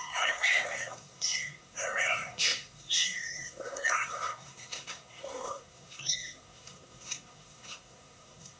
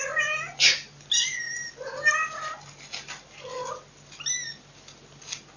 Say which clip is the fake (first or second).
first